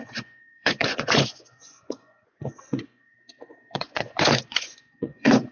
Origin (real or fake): fake